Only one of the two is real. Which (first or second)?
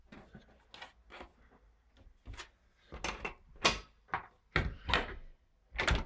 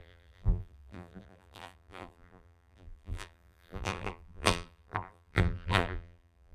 first